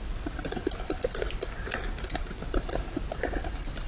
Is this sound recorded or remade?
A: recorded